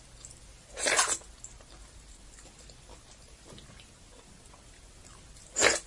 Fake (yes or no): no